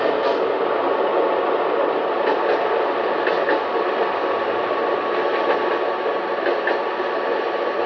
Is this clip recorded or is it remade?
recorded